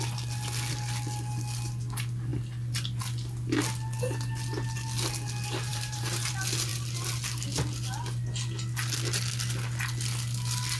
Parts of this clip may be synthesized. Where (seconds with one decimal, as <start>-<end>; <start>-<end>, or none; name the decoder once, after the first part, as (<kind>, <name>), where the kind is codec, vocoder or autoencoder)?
5.7-6.3 (vocoder, BigVGAN v2)